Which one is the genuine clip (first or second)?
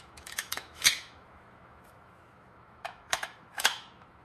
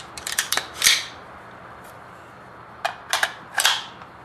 second